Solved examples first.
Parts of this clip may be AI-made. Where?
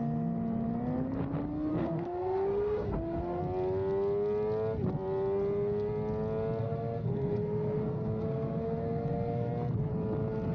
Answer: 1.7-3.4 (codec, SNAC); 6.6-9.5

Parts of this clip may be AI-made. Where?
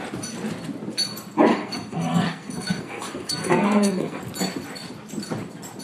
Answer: 1.5-4.2 (codec, SNAC)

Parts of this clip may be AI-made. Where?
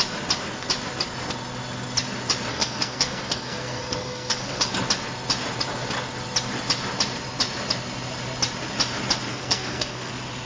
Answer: 2.5-4.7 (codec, SNAC); 9.3-10.1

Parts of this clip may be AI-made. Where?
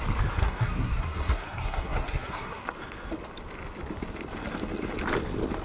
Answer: 0.4-2.6 (codec, SNAC)